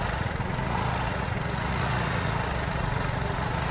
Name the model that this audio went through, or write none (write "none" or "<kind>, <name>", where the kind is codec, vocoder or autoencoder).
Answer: vocoder, Vocos